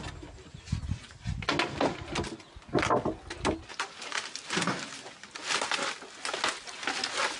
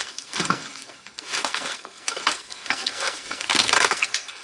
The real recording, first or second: first